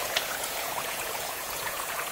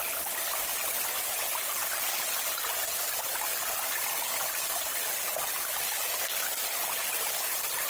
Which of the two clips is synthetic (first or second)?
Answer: first